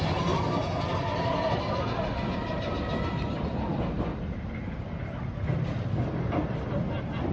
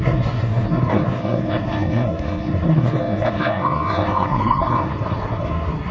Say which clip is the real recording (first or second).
first